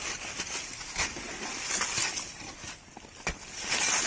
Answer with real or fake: real